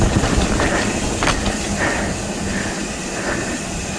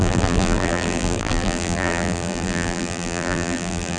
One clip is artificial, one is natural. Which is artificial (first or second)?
second